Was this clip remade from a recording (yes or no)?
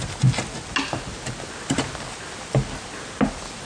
no